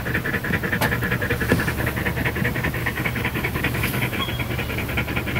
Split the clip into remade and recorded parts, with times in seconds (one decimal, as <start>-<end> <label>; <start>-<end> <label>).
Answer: 0.0-2.8 recorded; 2.8-4.2 remade; 4.2-5.4 recorded